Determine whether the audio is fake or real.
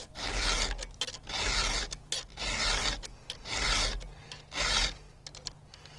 real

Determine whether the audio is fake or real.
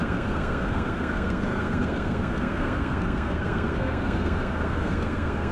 fake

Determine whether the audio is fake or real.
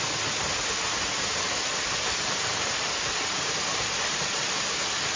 real